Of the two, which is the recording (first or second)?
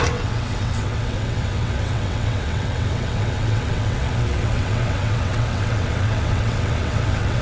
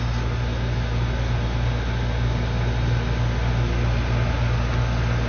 second